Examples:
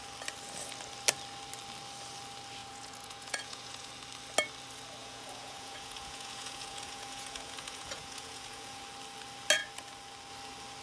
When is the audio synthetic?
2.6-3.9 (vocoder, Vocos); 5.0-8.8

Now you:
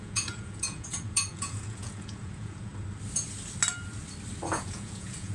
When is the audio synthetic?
0.0-2.7 (vocoder, Vocos); 4.5-5.3

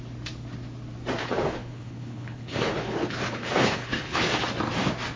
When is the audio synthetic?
1.2-4.3 (codec, HILCodec)

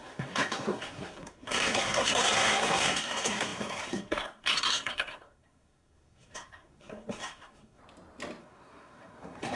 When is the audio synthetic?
0.0-7.8 (codec, SNAC); 8.4-9.6

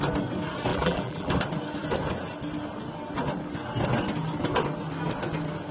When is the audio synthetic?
0.7-1.3 (vocoder, BigVGAN v2)

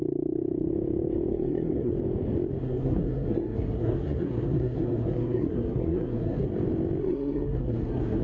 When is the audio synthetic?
1.3-1.9 (codec, SNAC); 2.6-6.5; 7.0-8.2

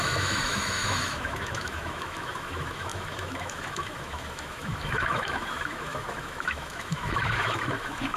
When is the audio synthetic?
0.0-8.2 (autoencoder, DAC-VAE)